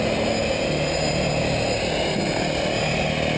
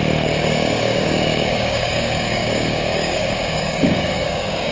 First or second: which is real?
first